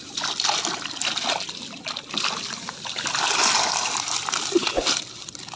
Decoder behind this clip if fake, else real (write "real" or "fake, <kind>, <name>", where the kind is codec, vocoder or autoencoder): real